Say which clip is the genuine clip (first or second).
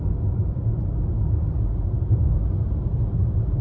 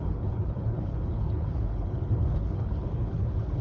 first